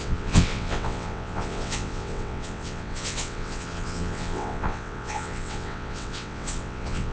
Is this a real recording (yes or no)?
no